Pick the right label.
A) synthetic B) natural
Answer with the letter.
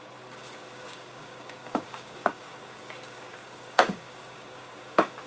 A